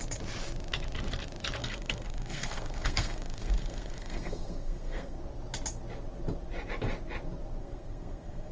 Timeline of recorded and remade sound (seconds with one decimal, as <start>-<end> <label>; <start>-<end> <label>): 0.0-1.6 recorded; 1.6-5.2 remade; 5.2-7.6 recorded; 7.6-8.5 remade